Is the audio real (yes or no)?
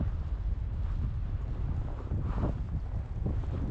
yes